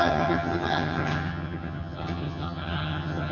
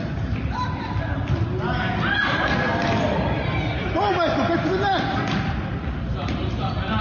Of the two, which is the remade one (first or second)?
first